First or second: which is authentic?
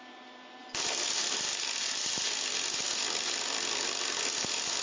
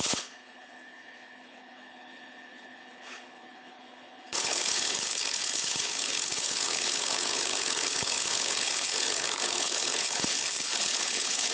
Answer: first